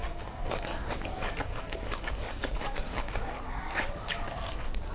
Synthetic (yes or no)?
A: yes